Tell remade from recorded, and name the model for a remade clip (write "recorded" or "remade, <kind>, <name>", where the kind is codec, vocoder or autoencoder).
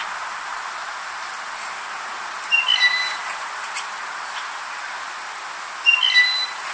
recorded